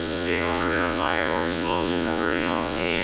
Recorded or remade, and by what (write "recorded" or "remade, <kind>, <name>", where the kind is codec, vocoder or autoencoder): remade, vocoder, Vocos